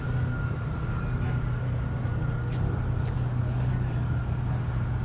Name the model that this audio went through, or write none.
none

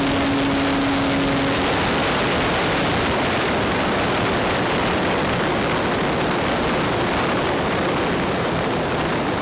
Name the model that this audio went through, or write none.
none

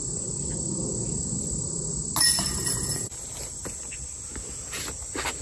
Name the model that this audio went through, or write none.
none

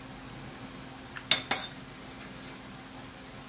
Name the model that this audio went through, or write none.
none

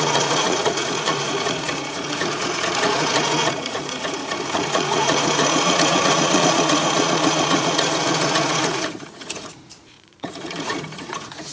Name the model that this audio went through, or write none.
vocoder, Vocos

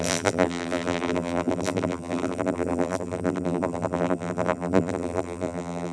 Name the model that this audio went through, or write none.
vocoder, BigVGAN v2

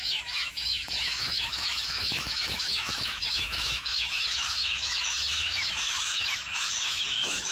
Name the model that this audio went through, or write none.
autoencoder, DAC-VAE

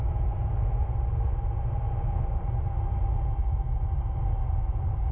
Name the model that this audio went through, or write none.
none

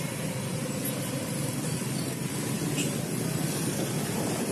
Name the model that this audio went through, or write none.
none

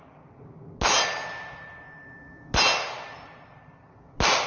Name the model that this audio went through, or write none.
none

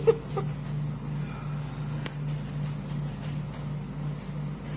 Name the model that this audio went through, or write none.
none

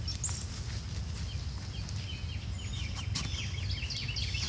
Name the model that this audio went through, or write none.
none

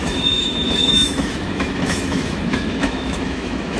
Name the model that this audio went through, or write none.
autoencoder, DAC-VAE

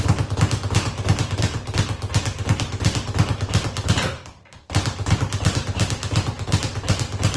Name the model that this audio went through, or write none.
none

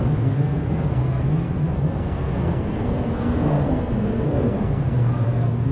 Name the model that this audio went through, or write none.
codec, SNAC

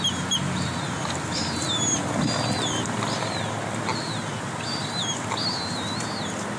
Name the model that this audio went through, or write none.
none